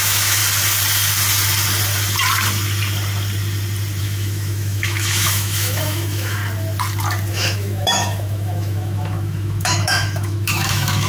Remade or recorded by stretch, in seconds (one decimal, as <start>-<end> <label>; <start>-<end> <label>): 0.0-0.4 remade; 0.4-4.0 recorded; 4.0-6.4 remade; 6.4-7.3 recorded; 7.3-11.1 remade